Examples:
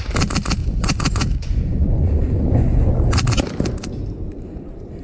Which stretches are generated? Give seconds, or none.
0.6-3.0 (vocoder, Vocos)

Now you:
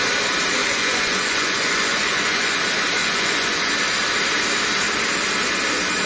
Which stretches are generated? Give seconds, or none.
0.6-2.6 (vocoder, Vocos); 3.0-3.7